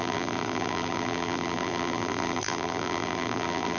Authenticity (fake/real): fake